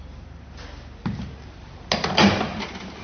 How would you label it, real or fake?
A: real